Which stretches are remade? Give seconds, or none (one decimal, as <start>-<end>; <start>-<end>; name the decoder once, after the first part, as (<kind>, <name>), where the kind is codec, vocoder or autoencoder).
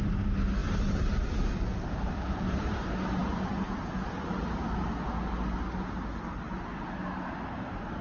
0.6-2.4 (vocoder, BigVGAN v2); 3.2-3.7